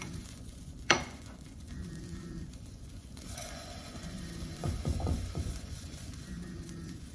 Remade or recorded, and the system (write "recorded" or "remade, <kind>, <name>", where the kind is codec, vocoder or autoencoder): remade, vocoder, Vocos